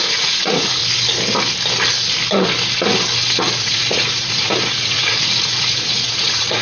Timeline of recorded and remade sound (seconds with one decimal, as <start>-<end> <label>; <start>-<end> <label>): 0.0-0.8 remade; 0.8-3.6 recorded; 3.6-6.6 remade